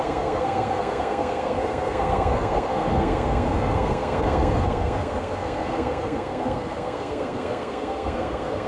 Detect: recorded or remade remade